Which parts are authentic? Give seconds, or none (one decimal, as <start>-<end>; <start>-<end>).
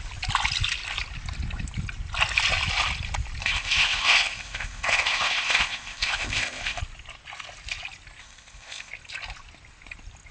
0.0-3.4; 6.8-8.2; 8.9-10.3